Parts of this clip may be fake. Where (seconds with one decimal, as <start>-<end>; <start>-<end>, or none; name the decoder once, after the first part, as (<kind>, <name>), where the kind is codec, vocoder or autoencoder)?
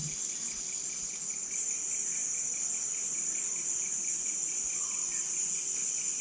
none